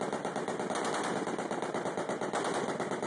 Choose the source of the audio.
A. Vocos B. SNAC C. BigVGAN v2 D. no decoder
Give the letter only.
D